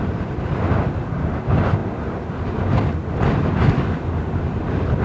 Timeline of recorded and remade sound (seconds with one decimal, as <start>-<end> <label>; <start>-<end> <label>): 0.0-5.0 recorded